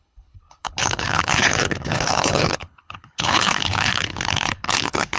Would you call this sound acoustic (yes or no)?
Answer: no